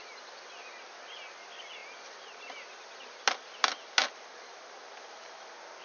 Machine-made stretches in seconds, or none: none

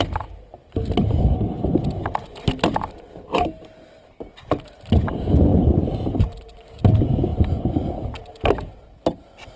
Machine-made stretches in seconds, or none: none

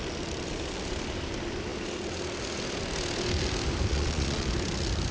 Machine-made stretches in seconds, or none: 3.9-4.5 (vocoder, Vocos)

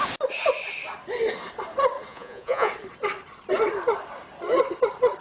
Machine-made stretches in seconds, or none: 2.1-2.7 (vocoder, Vocos)